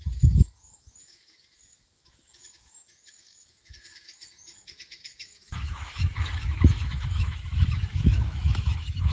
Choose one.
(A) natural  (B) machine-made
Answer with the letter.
B